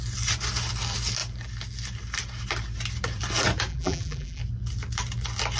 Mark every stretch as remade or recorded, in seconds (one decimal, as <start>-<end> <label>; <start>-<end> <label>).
0.0-3.7 recorded; 3.7-4.4 remade; 4.4-5.6 recorded